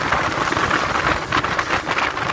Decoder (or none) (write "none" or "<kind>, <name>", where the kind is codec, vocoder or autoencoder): none